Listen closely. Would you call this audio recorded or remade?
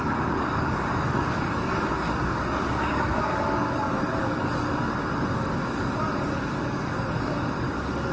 remade